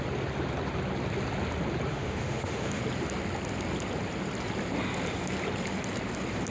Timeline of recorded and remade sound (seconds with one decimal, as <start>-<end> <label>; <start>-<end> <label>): 0.0-1.9 recorded; 1.9-2.8 remade; 2.8-6.5 recorded